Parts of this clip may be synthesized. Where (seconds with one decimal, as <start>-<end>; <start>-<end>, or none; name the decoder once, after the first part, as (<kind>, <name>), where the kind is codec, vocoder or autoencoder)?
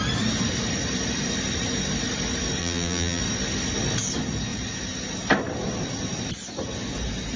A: 2.6-3.2 (vocoder, BigVGAN v2)